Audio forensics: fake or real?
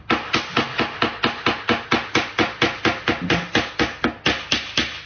real